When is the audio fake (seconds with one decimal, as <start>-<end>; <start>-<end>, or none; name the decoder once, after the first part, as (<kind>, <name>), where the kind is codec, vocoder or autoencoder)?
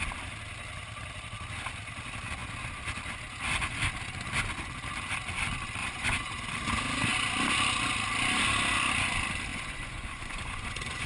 5.8-6.5 (vocoder, Vocos); 9.5-11.1